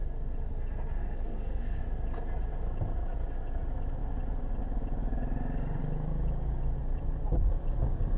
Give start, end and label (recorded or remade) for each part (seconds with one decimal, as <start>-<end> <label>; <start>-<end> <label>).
0.0-1.0 recorded; 1.0-1.8 remade; 1.8-8.2 recorded